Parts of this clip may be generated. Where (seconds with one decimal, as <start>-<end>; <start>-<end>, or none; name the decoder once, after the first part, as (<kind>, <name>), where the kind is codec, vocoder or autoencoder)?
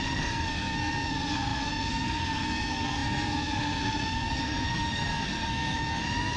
0.0-6.4 (codec, SNAC)